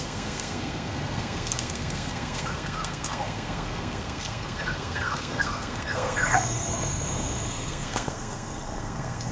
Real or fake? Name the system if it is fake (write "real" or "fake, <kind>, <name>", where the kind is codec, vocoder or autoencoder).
fake, codec, SNAC